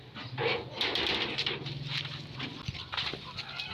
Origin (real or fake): real